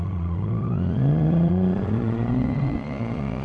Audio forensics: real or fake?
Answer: fake